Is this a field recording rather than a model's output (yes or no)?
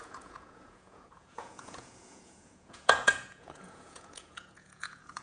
no